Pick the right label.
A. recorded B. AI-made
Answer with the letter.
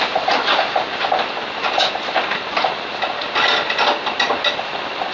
A